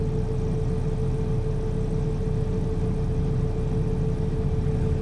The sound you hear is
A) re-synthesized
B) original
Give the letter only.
B